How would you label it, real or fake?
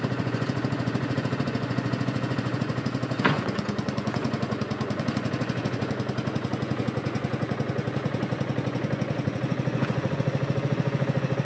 fake